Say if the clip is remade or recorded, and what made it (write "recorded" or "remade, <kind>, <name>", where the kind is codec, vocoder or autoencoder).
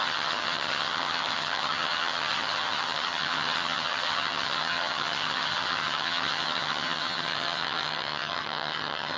remade, vocoder, HiFi-GAN